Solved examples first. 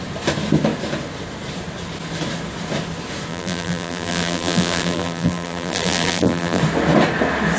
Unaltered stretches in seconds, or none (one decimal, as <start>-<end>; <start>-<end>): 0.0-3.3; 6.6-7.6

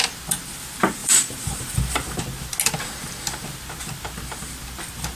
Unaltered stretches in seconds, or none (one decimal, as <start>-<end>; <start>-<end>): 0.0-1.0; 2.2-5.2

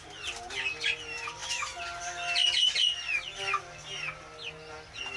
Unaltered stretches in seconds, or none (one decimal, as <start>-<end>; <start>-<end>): 0.0-5.2